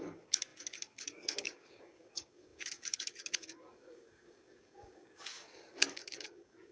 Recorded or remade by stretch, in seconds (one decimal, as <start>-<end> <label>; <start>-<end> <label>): 0.0-6.7 remade